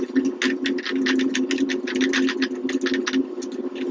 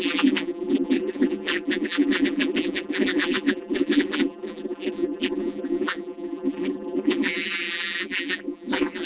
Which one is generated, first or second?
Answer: second